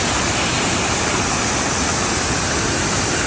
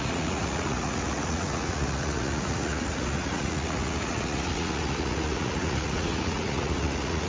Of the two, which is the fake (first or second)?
second